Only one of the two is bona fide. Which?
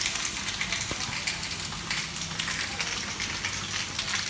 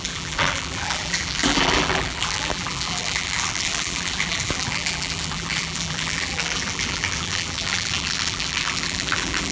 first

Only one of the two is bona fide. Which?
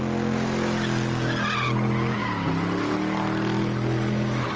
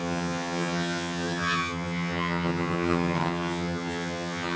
first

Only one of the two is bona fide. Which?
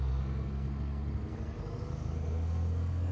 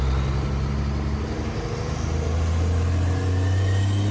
second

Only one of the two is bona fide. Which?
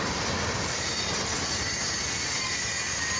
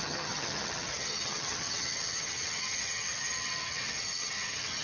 first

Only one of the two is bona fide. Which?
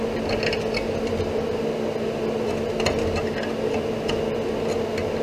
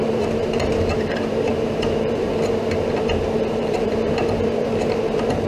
first